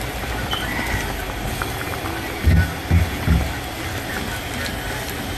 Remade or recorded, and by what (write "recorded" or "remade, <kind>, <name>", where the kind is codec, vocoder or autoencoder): recorded